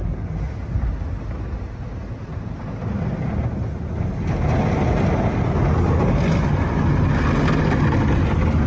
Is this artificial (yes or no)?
no